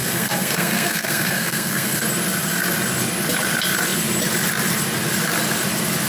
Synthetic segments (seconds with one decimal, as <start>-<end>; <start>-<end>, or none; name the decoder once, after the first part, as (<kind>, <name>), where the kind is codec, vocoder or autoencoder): 0.0-2.0 (codec, SNAC)